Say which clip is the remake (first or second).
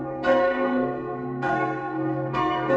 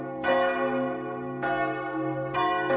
first